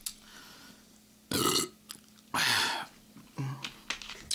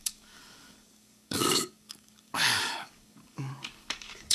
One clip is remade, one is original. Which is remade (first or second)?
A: second